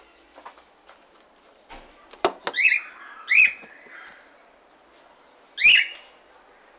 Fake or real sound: real